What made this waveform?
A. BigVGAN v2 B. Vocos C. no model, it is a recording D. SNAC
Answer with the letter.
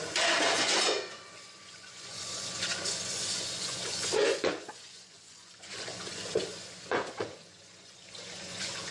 B